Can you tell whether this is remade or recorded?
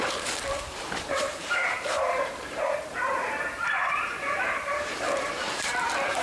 remade